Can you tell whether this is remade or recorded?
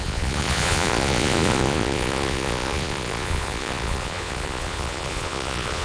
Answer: remade